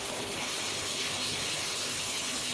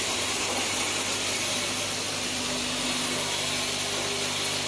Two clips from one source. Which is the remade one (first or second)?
first